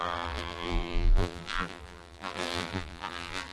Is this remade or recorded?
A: remade